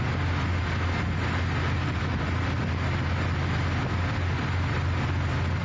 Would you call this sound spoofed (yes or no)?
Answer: no